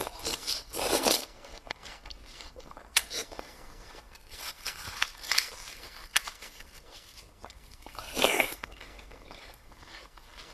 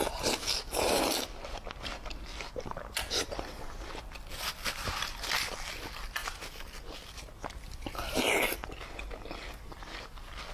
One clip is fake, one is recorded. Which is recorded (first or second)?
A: second